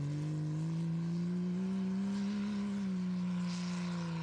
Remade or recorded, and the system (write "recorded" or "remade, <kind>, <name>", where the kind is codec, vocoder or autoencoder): recorded